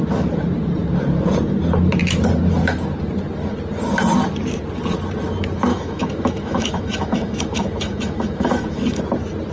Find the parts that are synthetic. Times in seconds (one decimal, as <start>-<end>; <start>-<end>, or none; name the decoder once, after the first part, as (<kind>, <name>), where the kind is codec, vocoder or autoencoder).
5.7-9.0 (autoencoder, DAC-VAE)